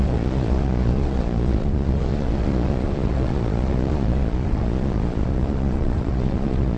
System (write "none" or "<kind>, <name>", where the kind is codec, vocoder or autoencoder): vocoder, Vocos